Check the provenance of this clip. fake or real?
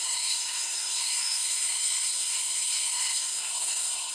fake